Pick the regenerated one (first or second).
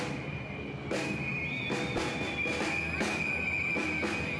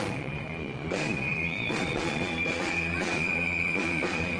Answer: second